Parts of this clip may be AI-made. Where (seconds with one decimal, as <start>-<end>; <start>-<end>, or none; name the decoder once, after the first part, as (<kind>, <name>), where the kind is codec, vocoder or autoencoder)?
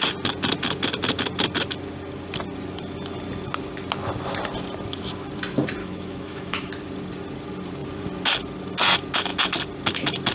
5.8-6.7 (autoencoder, DAC-VAE)